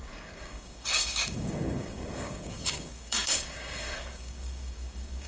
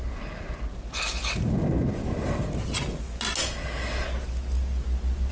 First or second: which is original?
second